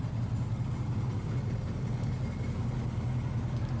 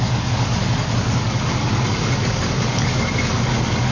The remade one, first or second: second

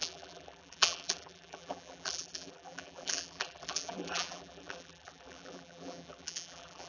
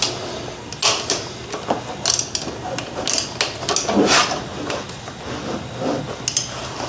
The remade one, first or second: first